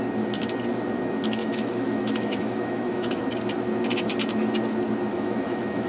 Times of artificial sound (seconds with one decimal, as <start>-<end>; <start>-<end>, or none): 1.4-3.2; 5.1-5.9